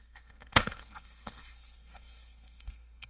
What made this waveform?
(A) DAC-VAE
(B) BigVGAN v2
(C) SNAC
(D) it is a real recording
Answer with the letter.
C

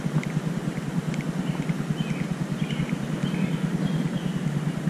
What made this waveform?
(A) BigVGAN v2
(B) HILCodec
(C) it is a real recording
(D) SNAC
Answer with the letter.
C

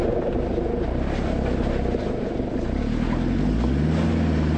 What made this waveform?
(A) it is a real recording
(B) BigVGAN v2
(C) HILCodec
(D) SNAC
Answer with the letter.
A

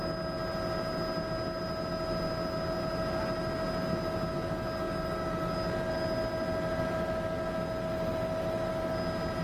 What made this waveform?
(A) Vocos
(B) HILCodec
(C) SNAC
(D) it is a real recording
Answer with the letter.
D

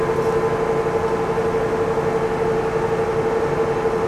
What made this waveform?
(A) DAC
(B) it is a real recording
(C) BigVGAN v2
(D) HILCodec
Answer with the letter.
B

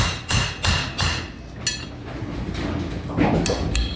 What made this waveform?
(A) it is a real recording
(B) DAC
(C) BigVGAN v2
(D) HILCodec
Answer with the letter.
A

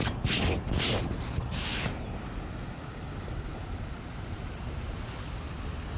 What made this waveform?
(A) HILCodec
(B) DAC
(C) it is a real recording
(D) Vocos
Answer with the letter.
C